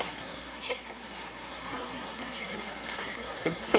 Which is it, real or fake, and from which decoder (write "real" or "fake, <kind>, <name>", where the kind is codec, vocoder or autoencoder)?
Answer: fake, codec, SNAC